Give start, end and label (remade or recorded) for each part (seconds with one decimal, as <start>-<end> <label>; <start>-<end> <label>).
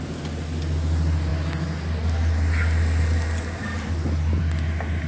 0.0-5.1 recorded